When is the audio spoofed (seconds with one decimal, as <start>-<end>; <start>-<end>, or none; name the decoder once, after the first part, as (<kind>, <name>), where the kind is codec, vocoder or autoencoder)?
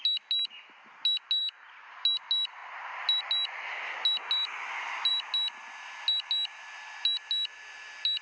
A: none